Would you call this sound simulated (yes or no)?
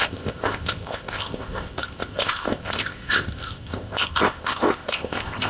yes